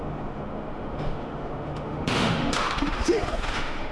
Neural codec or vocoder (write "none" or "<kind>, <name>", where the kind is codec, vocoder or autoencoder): autoencoder, DAC-VAE